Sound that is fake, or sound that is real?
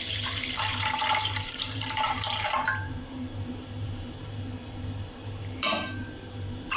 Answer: fake